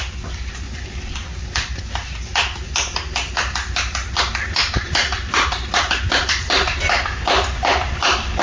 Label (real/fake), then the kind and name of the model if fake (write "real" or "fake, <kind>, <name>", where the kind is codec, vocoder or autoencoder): real